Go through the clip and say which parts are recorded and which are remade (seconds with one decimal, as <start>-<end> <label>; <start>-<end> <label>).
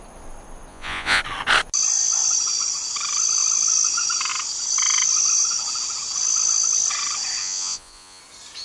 0.0-0.7 recorded; 0.7-1.2 remade; 1.2-7.4 recorded; 7.4-8.2 remade; 8.2-8.6 recorded